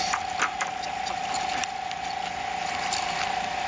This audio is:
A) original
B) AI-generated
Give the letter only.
A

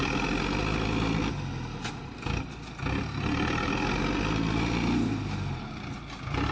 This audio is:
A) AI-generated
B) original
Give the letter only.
B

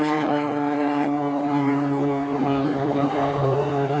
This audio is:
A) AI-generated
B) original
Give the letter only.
A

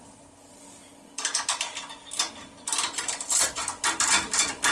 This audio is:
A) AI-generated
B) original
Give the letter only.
B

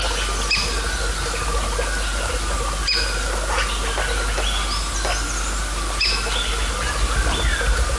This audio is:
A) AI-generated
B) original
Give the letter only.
B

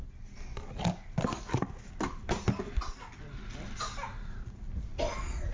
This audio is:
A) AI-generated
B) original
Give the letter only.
B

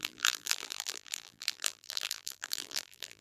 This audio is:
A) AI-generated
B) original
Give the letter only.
A